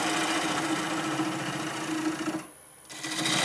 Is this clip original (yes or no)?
yes